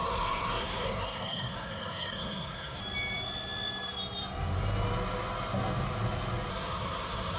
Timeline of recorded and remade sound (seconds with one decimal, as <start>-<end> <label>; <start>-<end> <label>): 0.0-2.8 remade; 2.8-6.5 recorded; 6.5-7.4 remade